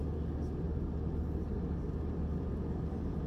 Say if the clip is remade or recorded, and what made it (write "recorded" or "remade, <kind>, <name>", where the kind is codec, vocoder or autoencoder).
recorded